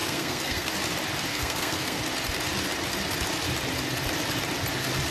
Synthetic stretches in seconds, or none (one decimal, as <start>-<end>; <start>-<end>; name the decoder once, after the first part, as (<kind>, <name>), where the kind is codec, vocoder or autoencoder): 0.0-0.7 (codec, SNAC); 1.3-2.0